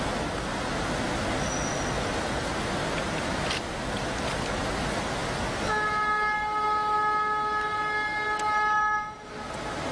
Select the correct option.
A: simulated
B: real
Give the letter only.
B